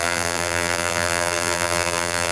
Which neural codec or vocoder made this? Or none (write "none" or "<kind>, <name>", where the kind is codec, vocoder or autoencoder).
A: vocoder, BigVGAN v2